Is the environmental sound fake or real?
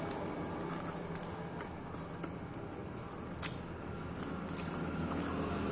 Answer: real